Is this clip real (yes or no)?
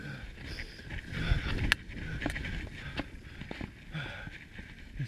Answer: yes